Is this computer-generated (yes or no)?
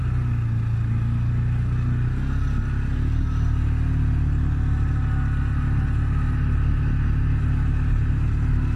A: no